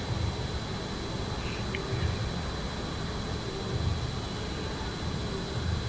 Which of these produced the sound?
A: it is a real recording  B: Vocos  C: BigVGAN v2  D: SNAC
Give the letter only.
A